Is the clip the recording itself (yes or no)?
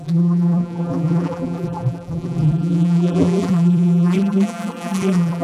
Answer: no